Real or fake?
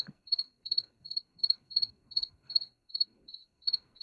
fake